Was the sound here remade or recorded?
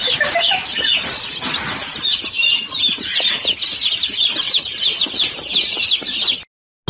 recorded